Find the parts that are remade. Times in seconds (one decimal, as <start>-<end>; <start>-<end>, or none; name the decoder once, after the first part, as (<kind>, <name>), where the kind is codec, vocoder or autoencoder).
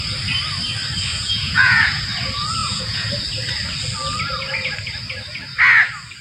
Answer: 1.1-2.0 (vocoder, Vocos); 2.6-3.1